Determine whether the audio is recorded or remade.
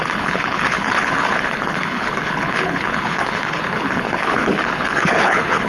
remade